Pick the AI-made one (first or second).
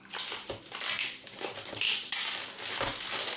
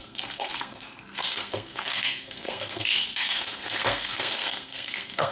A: second